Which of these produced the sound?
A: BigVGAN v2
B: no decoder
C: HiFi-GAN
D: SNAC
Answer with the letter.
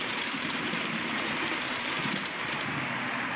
A